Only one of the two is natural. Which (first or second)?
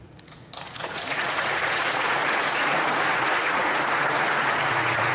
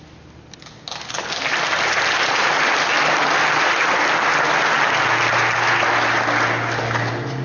second